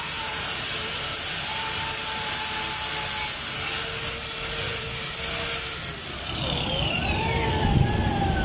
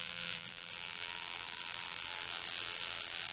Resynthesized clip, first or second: second